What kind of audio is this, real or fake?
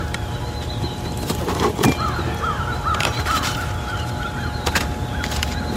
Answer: fake